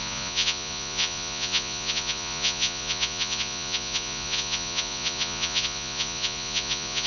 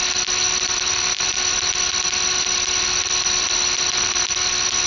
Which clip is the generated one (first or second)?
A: first